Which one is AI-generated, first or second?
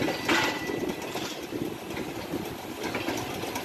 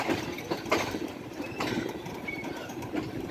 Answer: second